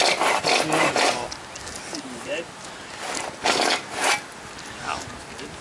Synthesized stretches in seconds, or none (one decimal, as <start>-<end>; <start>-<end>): none